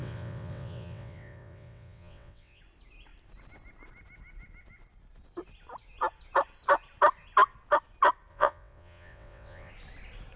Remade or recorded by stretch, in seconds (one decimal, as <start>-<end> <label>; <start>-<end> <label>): 0.0-2.6 remade; 2.6-8.3 recorded; 8.3-9.7 remade; 9.7-10.4 recorded